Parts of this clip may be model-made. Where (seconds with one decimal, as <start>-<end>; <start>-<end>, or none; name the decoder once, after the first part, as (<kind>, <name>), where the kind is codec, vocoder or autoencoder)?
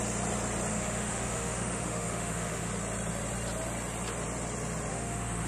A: 0.7-2.7 (autoencoder, DAC-VAE); 4.9-5.5